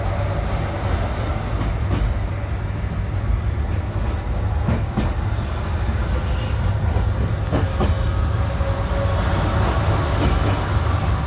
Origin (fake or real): real